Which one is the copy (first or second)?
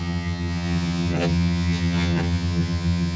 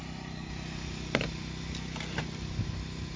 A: first